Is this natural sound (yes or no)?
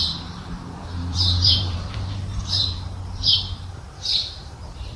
no